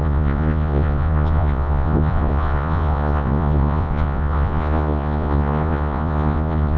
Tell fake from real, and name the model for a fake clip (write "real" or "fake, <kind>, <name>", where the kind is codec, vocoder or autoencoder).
fake, vocoder, Vocos